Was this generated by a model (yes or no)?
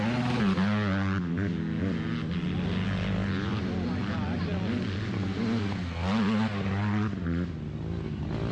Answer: no